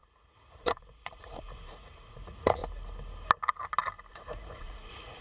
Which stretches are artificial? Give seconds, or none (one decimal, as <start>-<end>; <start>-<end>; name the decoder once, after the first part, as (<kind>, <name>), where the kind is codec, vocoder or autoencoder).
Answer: 0.0-2.6 (vocoder, Vocos); 4.1-5.2